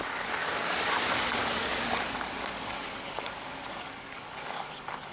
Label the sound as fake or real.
fake